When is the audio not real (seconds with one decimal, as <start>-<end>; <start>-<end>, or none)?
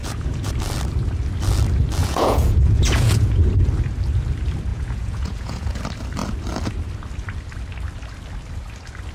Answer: 0.0-0.5; 2.0-3.5; 4.7-5.8